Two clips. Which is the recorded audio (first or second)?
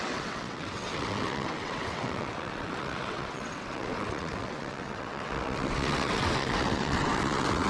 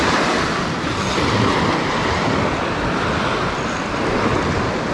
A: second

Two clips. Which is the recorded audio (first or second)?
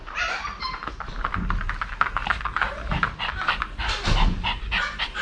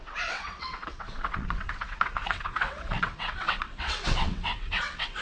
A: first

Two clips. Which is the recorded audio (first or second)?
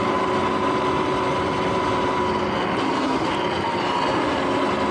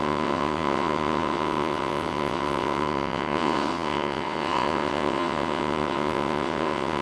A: first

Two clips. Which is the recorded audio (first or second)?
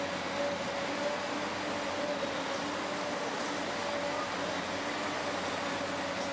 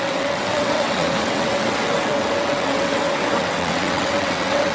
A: first